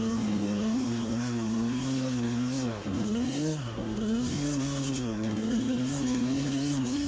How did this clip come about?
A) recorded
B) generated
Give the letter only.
B